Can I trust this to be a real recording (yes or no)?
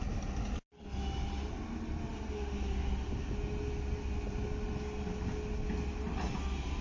yes